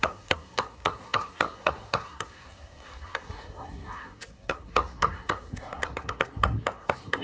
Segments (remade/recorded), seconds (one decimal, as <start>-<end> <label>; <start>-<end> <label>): 0.0-7.2 remade